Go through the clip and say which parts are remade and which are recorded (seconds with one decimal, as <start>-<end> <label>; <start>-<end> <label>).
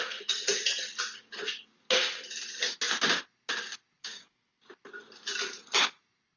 0.0-4.0 recorded; 4.0-4.6 remade; 4.6-6.4 recorded